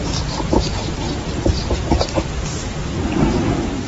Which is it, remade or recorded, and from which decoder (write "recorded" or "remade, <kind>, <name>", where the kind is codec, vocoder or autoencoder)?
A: recorded